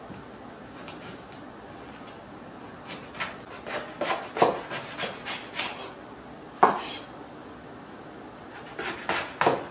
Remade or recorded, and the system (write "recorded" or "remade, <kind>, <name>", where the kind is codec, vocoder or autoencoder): recorded